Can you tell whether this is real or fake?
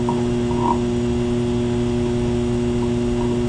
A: real